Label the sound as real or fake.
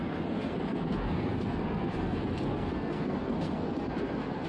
fake